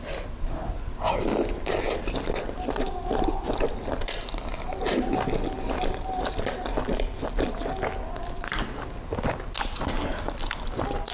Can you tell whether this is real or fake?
real